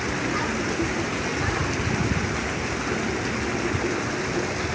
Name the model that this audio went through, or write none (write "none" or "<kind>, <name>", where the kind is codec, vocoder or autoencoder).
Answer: none